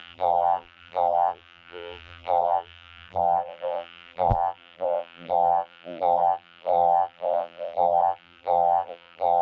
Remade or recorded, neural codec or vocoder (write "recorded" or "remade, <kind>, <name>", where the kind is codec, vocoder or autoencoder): remade, vocoder, BigVGAN v2